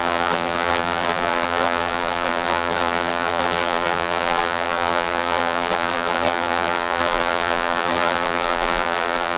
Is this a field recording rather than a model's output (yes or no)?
no